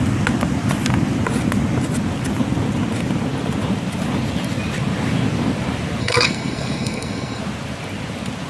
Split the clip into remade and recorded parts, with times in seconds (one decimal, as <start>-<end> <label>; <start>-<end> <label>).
0.0-6.0 recorded; 6.0-7.4 remade; 7.4-8.5 recorded

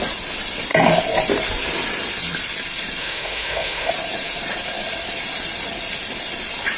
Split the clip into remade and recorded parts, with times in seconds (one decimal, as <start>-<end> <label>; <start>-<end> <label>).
0.0-3.0 recorded; 3.0-3.9 remade; 3.9-6.8 recorded

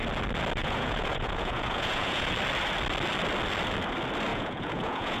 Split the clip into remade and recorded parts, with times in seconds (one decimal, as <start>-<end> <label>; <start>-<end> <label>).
0.0-0.6 recorded; 0.6-2.3 remade; 2.3-4.3 recorded; 4.3-5.2 remade

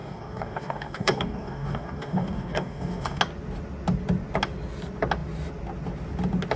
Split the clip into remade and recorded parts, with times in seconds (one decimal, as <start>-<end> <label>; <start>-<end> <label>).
0.0-3.2 remade; 3.2-6.6 recorded